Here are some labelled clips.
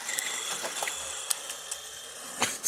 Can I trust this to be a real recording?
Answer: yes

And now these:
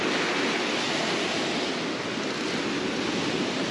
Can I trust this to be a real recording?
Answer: yes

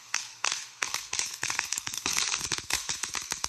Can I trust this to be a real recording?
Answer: no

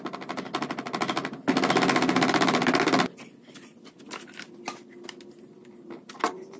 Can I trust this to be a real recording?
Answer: yes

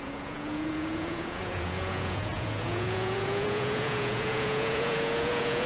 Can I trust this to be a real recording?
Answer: no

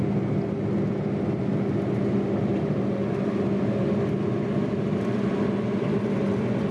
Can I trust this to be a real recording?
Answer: yes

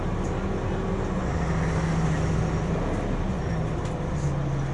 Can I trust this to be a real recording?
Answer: yes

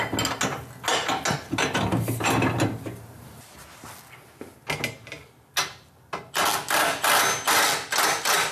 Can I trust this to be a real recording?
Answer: yes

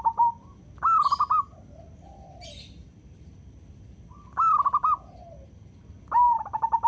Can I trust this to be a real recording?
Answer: yes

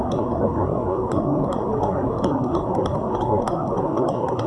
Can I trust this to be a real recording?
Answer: no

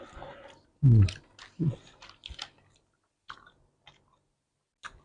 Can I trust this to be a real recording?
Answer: yes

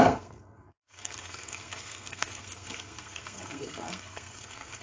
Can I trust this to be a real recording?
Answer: no